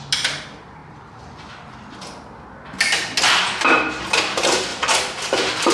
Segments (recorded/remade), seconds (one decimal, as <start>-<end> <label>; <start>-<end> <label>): 0.0-5.7 recorded